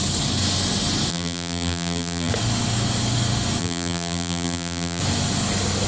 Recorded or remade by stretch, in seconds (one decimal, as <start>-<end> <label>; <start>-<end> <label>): 0.0-1.1 recorded; 1.1-2.3 remade; 2.3-3.6 recorded; 3.6-5.0 remade; 5.0-5.9 recorded